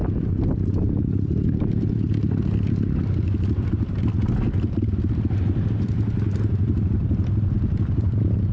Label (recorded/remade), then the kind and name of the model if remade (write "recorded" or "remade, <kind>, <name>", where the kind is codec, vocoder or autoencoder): recorded